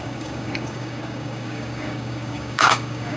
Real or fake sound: fake